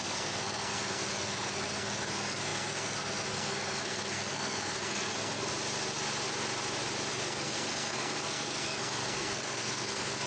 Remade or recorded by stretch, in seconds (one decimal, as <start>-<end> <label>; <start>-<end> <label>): 0.0-5.5 remade; 5.5-7.1 recorded; 7.1-10.3 remade